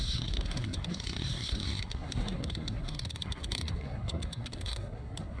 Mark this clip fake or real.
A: fake